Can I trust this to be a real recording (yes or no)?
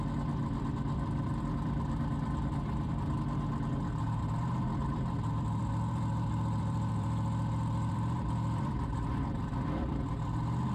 no